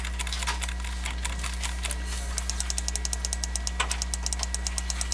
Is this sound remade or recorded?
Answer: recorded